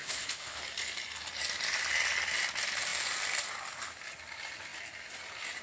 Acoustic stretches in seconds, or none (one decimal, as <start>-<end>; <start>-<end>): 0.6-5.6